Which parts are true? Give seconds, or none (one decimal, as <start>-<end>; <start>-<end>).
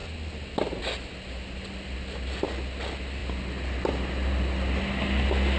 0.0-5.6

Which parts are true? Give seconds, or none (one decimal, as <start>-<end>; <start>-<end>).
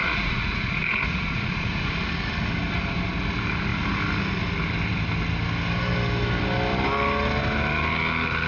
1.9-8.5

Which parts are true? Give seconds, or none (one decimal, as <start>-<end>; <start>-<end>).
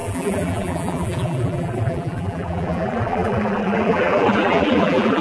none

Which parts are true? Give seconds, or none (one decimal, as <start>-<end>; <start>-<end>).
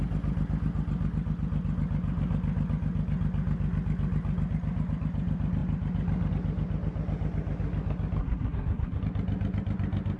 0.0-8.2; 9.0-10.2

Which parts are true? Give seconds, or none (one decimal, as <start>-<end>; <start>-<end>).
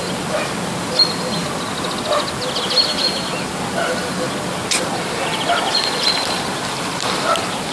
0.0-7.7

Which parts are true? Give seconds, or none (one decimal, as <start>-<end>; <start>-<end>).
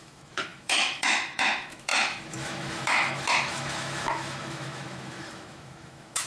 none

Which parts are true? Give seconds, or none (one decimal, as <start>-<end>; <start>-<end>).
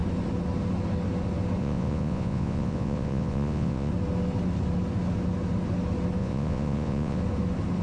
0.0-1.6; 3.9-6.2; 7.2-7.8